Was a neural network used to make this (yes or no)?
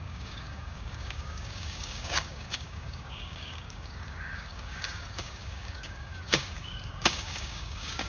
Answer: yes